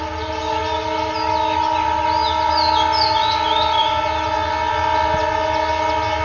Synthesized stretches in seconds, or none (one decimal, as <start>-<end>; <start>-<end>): none